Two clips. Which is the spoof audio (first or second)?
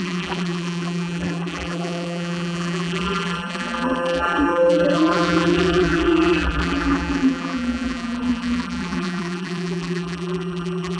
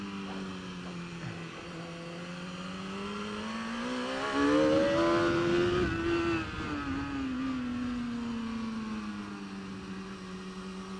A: first